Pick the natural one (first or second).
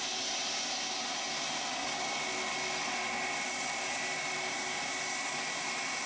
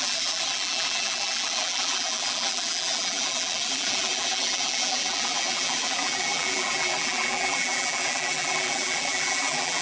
first